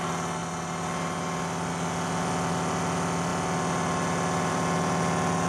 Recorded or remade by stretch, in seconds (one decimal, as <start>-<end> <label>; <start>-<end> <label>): 0.0-5.5 recorded